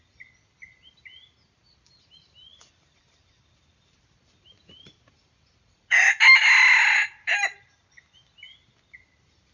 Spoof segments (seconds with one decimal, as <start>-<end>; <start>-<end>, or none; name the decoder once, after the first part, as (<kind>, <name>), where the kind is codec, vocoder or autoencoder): 2.5-6.1 (vocoder, BigVGAN v2); 7.0-7.7